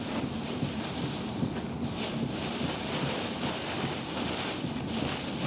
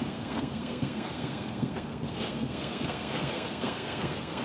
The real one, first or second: first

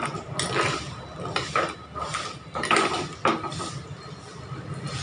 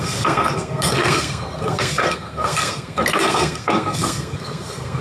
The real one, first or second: first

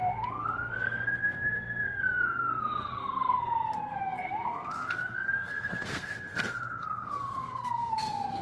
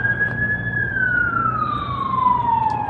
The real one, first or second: second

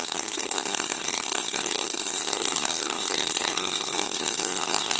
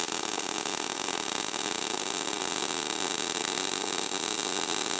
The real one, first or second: second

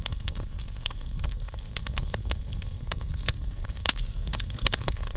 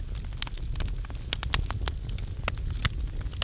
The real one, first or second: second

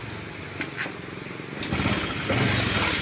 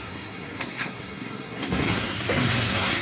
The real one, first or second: first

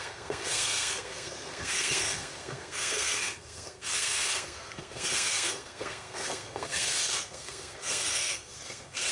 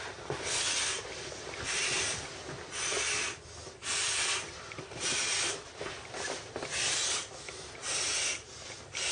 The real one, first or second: second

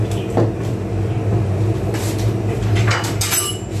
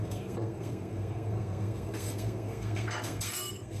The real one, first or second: first